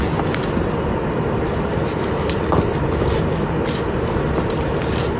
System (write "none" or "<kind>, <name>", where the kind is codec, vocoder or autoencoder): none